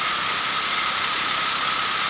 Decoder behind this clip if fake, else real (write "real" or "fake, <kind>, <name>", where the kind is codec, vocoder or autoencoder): real